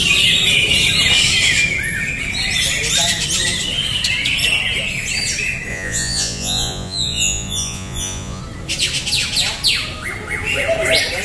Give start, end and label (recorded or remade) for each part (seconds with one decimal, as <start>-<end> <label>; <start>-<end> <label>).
0.0-5.7 recorded; 5.7-8.4 remade; 8.4-11.2 recorded